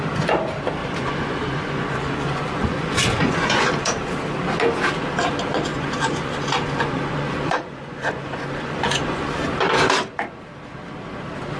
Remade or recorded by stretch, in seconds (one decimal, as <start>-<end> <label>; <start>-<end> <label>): 0.0-0.8 recorded; 0.8-3.7 remade; 3.7-5.7 recorded; 5.7-9.3 remade; 9.3-11.6 recorded